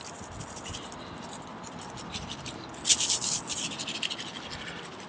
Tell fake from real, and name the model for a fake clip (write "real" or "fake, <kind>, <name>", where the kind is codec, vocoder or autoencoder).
real